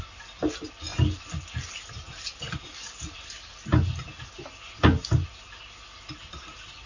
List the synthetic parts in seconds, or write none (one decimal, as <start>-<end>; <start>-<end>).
none